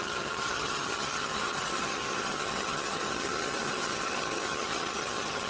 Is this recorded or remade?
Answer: remade